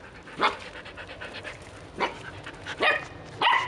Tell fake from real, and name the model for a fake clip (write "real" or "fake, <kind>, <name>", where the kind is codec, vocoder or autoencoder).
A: real